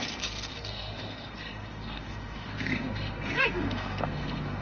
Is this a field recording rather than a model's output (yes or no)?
no